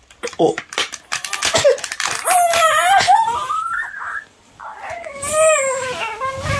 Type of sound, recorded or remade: recorded